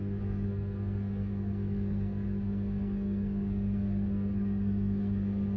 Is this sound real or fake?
fake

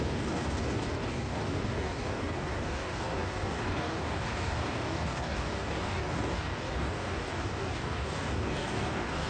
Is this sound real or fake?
fake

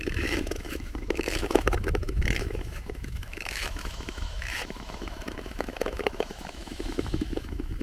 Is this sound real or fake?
fake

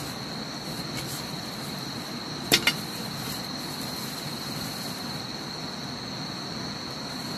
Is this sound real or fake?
real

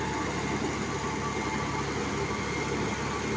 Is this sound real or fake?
real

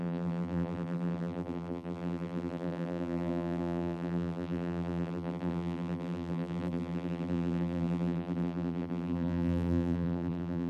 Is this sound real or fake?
fake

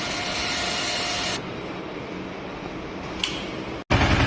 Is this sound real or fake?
real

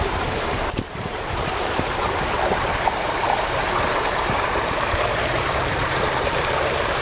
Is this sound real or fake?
fake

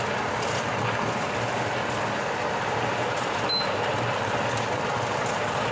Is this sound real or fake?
real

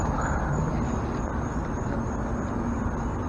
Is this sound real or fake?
real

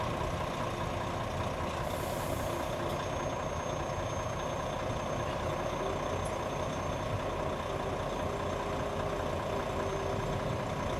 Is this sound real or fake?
real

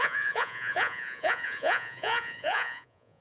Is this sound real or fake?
fake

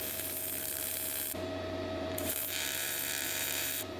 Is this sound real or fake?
fake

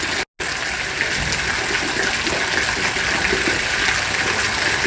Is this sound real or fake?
real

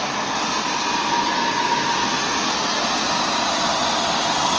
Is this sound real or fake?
real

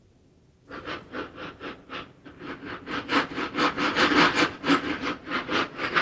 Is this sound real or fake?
real